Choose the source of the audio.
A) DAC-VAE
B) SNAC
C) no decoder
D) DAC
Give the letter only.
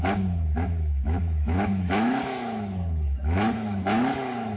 A